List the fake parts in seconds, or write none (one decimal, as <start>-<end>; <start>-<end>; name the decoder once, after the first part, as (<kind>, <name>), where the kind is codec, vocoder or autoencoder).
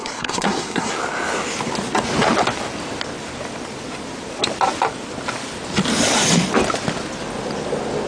0.0-0.9 (codec, SNAC)